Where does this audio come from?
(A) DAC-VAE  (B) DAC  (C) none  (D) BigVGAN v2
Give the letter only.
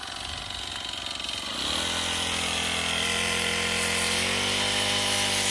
C